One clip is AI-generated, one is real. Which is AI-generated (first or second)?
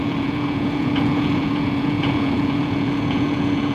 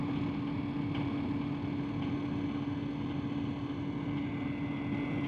first